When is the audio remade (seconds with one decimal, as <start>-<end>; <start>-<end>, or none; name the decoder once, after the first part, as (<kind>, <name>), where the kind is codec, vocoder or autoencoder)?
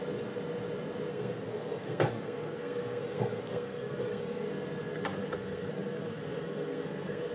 1.1-4.5 (codec, SNAC); 5.2-7.3